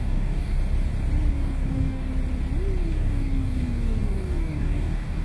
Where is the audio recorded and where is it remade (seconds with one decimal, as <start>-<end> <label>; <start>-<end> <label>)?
0.0-0.6 remade; 0.6-1.3 recorded; 1.3-2.1 remade; 2.1-2.8 recorded; 2.8-5.2 remade